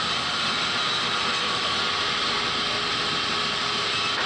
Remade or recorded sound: recorded